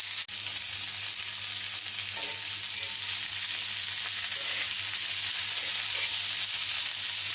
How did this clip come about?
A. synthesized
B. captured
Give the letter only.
B